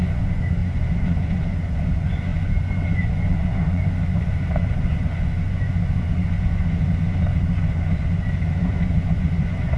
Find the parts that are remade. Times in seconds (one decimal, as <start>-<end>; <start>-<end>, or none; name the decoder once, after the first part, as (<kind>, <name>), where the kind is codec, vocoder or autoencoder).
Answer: 0.0-9.8 (vocoder, Vocos)